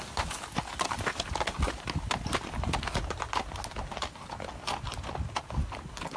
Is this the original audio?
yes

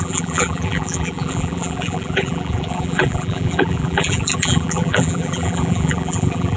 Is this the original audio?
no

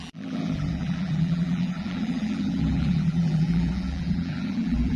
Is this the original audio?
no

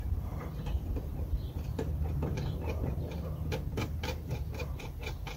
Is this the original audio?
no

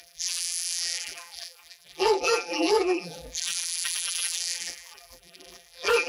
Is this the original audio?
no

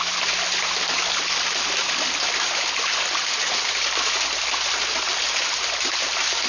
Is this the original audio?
yes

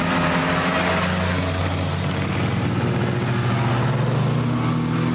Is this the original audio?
yes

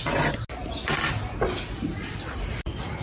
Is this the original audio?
yes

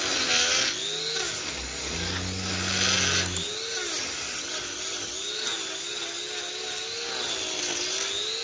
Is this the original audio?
yes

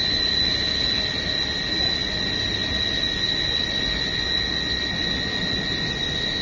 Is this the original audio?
yes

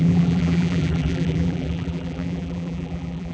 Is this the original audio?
no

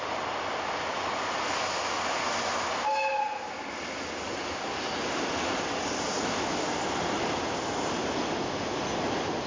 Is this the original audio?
yes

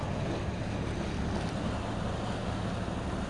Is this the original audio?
yes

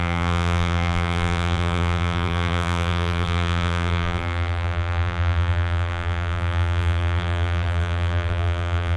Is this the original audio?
no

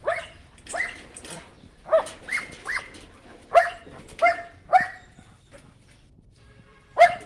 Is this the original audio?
no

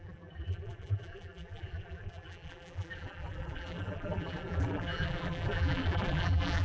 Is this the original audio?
no